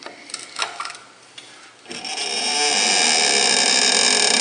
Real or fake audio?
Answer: real